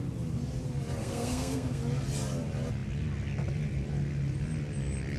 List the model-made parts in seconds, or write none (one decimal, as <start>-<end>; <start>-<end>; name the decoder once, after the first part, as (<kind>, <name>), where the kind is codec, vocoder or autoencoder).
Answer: 1.0-1.8 (codec, SNAC)